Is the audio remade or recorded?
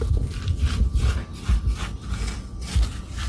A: recorded